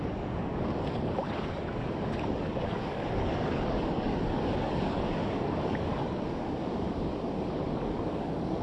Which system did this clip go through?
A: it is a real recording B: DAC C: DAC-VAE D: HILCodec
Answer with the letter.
B